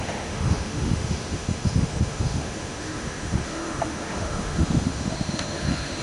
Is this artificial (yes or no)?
yes